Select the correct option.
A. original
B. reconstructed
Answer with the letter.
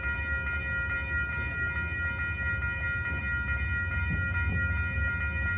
A